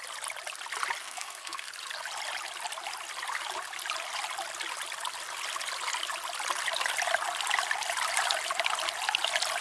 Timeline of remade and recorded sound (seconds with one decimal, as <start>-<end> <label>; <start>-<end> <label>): 0.0-1.0 recorded; 1.0-1.7 remade; 1.7-9.6 recorded